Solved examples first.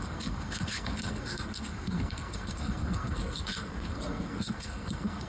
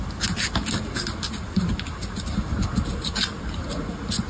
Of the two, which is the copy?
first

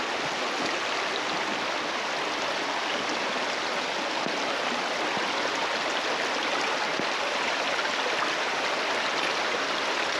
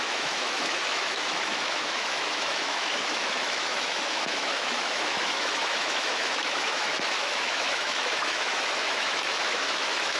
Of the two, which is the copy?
second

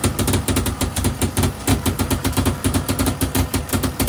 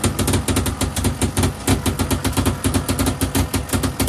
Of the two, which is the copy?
first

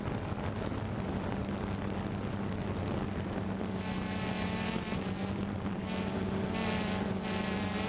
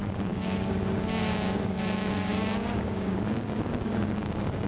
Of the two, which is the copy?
second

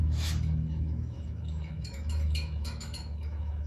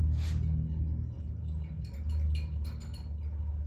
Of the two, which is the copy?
first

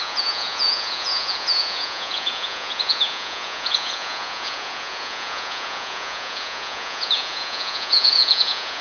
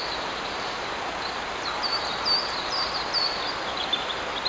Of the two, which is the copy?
first